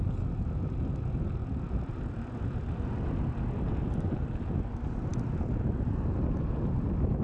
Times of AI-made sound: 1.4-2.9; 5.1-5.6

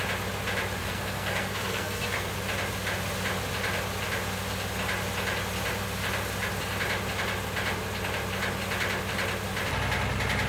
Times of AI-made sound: 0.8-2.3